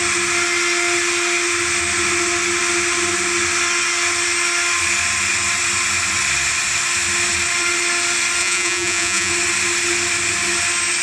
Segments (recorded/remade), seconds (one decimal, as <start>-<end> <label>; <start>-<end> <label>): 0.0-8.4 recorded; 8.4-9.3 remade; 9.3-11.0 recorded